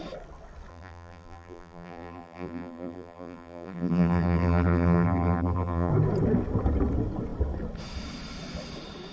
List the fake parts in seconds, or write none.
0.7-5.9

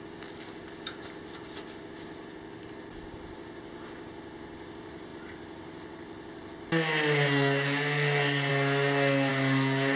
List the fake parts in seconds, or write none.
none

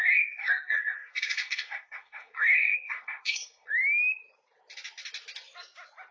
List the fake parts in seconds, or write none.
0.0-3.7